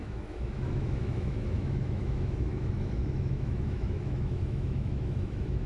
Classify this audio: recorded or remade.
remade